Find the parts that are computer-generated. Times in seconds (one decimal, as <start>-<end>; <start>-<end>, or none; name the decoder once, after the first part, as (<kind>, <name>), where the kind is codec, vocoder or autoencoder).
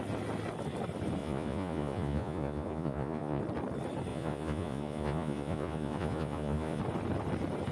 1.2-3.4 (vocoder, Vocos); 4.1-6.8